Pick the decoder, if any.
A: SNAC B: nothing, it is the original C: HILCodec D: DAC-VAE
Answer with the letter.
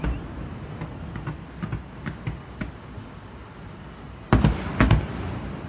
B